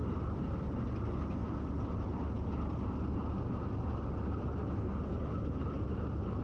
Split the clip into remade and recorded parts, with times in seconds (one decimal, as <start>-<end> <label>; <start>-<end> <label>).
0.0-6.4 recorded